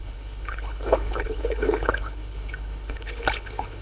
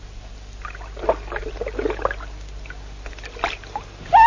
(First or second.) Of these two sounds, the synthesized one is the first